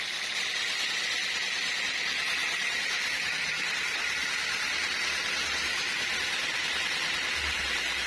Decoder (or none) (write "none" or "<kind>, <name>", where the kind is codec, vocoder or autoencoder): none